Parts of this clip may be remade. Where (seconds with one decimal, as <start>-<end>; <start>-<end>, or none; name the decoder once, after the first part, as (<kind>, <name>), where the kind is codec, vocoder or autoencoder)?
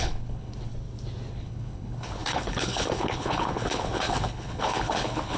0.0-0.7 (codec, HILCodec); 1.3-5.4